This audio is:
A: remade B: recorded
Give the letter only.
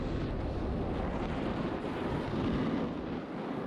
B